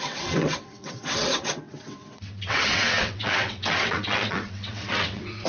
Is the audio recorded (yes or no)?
no